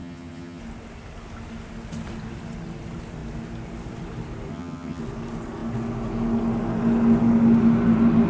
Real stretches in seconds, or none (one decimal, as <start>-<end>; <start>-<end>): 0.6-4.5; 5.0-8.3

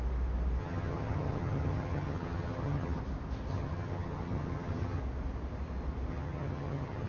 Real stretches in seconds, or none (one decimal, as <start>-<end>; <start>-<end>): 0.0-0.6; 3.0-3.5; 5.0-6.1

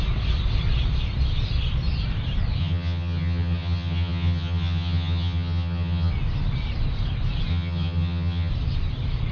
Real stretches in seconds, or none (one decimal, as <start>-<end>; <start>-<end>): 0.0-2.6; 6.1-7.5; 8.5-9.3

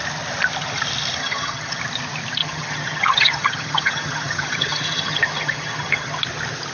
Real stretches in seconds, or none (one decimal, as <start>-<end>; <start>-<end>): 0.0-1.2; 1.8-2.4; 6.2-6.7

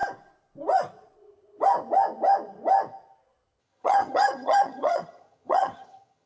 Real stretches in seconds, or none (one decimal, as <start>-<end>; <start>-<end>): 0.0-3.6